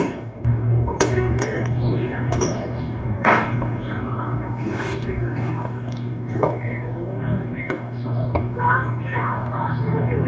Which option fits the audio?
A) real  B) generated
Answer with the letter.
B